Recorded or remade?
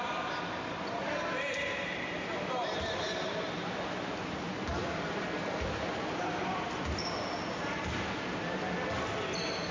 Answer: recorded